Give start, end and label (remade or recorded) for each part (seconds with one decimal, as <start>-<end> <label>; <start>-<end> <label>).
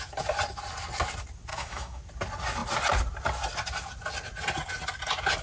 0.0-1.5 recorded; 1.5-2.0 remade; 2.0-5.4 recorded